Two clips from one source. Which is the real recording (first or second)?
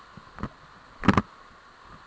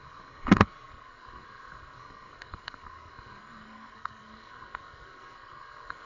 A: first